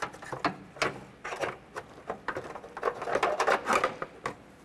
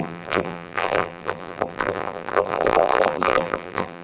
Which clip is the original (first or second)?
first